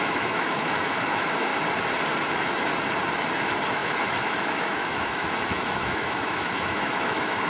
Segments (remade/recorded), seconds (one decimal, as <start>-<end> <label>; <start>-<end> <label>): 0.0-1.5 remade; 1.5-3.4 recorded; 3.4-7.5 remade